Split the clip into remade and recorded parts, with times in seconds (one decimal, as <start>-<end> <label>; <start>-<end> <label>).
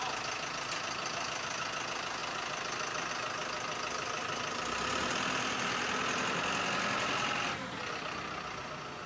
0.0-9.1 recorded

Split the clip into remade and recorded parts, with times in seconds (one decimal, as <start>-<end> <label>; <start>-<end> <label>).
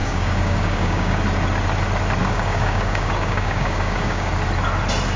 0.0-1.2 remade; 1.2-2.2 recorded; 2.2-4.3 remade; 4.3-5.2 recorded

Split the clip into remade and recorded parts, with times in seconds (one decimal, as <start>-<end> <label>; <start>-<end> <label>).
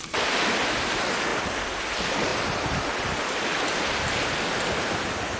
0.0-5.4 recorded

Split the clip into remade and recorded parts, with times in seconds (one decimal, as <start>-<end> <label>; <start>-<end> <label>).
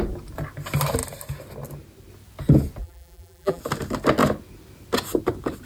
0.0-2.8 recorded; 2.8-3.6 remade; 3.6-5.7 recorded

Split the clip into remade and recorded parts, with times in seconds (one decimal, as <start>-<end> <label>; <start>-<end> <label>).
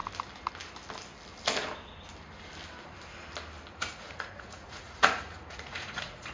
0.0-3.7 recorded; 3.7-6.3 remade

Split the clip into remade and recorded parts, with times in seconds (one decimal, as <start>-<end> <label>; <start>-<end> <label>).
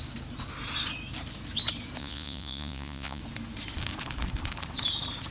0.0-2.0 recorded; 2.0-3.2 remade; 3.2-5.3 recorded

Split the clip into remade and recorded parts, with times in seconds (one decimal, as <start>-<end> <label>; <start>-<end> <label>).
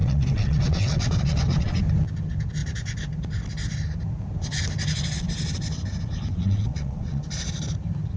0.0-1.8 remade; 1.8-6.3 recorded; 6.3-7.2 remade; 7.2-8.2 recorded